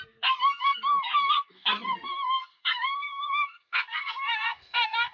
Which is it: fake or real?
fake